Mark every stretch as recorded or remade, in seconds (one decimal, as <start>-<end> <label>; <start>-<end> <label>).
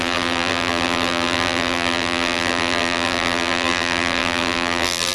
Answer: 0.0-5.1 remade